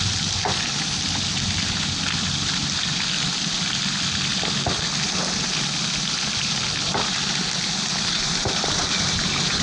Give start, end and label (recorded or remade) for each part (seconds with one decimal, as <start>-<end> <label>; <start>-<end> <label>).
0.0-9.6 recorded

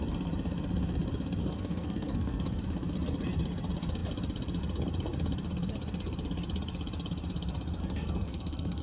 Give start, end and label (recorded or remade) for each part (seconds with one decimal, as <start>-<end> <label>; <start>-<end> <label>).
0.0-1.4 recorded; 1.4-2.6 remade; 2.6-7.8 recorded; 7.8-8.8 remade